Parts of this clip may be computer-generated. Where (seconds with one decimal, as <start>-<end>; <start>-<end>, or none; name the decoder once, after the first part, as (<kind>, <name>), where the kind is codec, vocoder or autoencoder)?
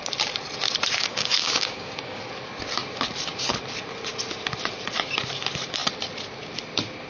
1.0-2.3 (codec, DAC)